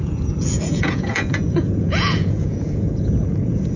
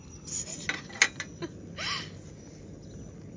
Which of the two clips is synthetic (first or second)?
first